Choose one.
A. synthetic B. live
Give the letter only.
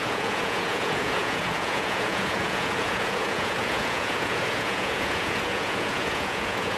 A